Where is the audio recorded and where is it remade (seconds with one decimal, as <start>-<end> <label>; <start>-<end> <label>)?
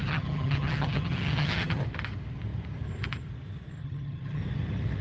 0.0-1.8 remade; 1.8-3.8 recorded; 3.8-4.4 remade; 4.4-5.0 recorded